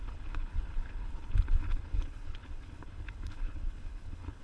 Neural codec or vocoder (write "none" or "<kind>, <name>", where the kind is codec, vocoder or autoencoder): codec, HILCodec